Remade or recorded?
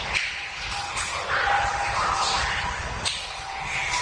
recorded